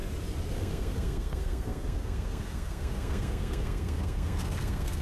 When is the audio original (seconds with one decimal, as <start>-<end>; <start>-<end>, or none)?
0.0-0.5